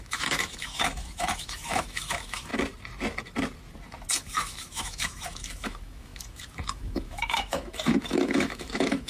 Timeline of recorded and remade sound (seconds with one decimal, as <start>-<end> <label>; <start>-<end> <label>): 0.0-2.5 remade; 2.5-4.2 recorded; 4.2-9.1 remade